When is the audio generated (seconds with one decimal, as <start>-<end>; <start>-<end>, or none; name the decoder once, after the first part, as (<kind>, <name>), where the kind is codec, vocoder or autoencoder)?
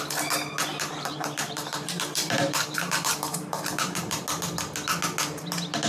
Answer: 0.7-4.2 (vocoder, BigVGAN v2)